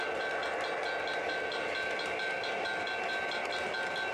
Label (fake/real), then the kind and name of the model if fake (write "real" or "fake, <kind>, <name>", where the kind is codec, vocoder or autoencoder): real